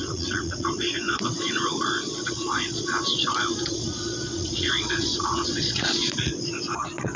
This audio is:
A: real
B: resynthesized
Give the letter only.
B